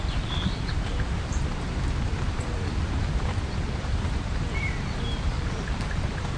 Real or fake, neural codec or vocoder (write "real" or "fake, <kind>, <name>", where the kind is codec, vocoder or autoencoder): fake, vocoder, BigVGAN v2